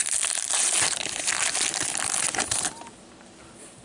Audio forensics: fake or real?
real